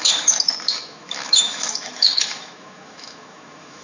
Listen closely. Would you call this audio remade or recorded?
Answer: remade